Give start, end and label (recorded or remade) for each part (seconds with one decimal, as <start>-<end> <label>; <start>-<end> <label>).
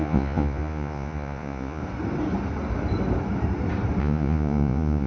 0.0-1.8 remade; 1.8-4.0 recorded; 4.0-5.1 remade